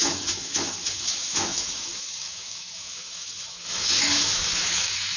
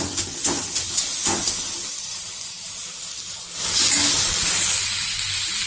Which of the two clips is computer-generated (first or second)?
first